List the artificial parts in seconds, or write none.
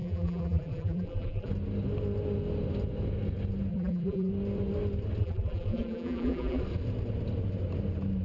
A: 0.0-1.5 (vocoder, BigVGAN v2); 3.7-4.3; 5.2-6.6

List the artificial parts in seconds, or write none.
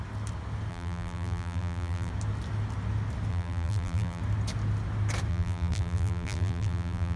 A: 0.7-2.1 (vocoder, BigVGAN v2); 3.3-4.2; 5.3-7.2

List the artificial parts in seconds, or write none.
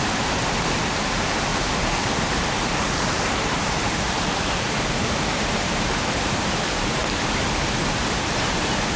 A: 0.0-1.5 (vocoder, BigVGAN v2); 3.0-7.0; 7.8-9.0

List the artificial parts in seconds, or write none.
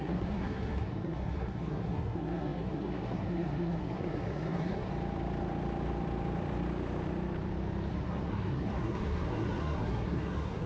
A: 0.0-4.9 (codec, SNAC); 7.9-10.7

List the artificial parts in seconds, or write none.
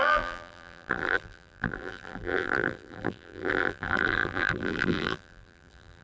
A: 0.0-6.0 (vocoder, BigVGAN v2)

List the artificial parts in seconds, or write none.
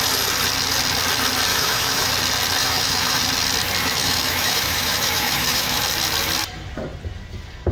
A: 1.5-2.1 (autoencoder, DAC-VAE); 2.6-3.2; 3.8-5.8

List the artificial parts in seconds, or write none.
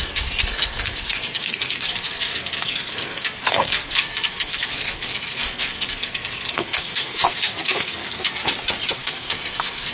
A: 0.0-8.4 (codec, SNAC); 8.9-9.9